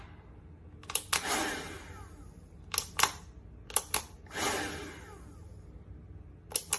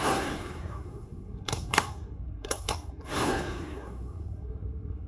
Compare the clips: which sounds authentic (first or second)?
first